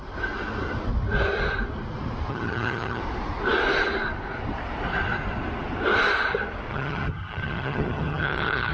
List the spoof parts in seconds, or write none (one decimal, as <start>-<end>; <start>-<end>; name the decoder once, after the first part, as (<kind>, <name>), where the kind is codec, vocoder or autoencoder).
2.3-3.0 (vocoder, HiFi-GAN); 6.7-8.7